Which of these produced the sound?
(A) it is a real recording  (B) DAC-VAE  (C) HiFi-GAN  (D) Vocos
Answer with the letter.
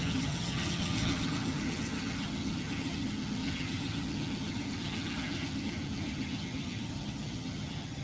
C